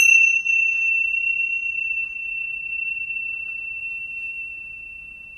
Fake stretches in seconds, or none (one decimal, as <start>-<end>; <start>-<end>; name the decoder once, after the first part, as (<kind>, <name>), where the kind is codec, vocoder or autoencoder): 3.8-4.5 (vocoder, BigVGAN v2)